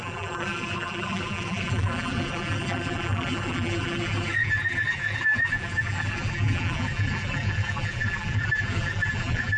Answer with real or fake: fake